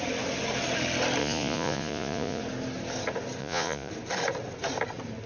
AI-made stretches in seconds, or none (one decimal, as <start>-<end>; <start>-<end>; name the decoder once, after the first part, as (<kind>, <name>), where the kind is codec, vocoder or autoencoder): 1.2-2.4 (vocoder, Vocos); 3.4-3.9